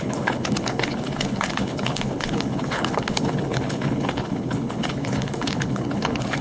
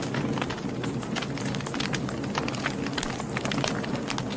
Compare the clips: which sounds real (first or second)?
second